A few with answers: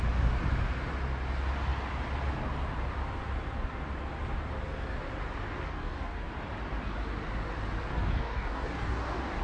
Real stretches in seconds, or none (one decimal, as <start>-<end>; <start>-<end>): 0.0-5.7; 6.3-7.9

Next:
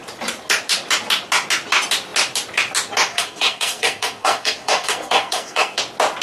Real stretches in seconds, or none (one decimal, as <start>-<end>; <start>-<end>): 0.0-3.1; 5.8-6.2

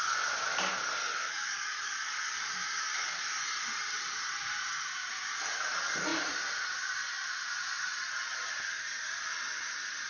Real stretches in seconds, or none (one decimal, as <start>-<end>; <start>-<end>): 0.0-1.0; 3.2-10.1

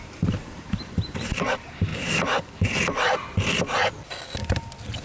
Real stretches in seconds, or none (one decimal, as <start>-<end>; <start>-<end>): 1.9-5.0

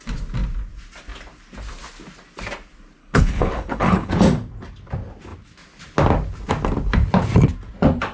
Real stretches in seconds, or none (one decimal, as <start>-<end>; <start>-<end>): 0.0-3.0; 4.1-8.1

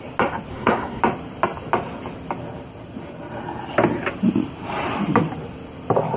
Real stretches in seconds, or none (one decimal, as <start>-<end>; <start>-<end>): 0.0-0.5; 1.0-6.2

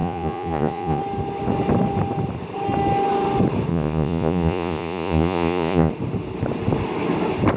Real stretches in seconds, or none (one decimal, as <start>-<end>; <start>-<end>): 1.0-3.7; 5.9-7.6